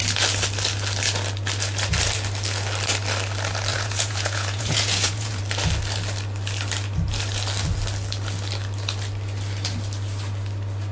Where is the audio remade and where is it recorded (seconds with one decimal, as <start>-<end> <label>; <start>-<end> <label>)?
0.0-3.7 recorded; 3.7-5.4 remade; 5.4-10.9 recorded

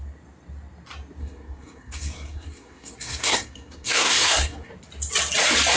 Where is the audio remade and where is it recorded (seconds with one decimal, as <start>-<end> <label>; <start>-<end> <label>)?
0.0-1.2 recorded; 1.2-4.7 remade; 4.7-5.8 recorded

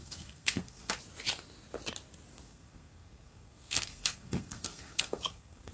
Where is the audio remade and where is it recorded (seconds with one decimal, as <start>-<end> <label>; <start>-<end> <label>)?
0.0-1.0 remade; 1.0-2.3 recorded; 2.3-5.7 remade

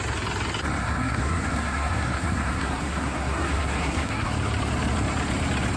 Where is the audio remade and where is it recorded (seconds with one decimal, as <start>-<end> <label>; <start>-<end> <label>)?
0.0-0.8 recorded; 0.8-4.3 remade; 4.3-5.8 recorded

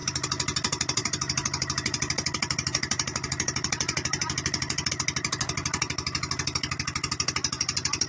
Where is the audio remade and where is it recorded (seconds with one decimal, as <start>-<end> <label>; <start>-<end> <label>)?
0.0-4.9 remade; 4.9-8.1 recorded

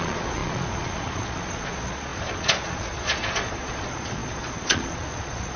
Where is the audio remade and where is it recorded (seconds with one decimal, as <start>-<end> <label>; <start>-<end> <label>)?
0.0-5.6 remade